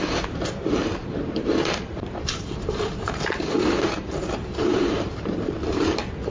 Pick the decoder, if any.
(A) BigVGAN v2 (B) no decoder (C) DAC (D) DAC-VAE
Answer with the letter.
A